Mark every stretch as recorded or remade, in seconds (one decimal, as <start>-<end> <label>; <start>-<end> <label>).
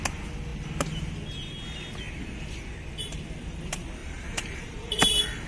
0.0-4.0 recorded; 4.0-5.5 remade